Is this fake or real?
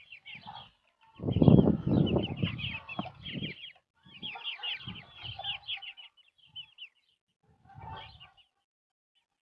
real